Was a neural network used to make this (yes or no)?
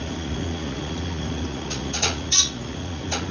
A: yes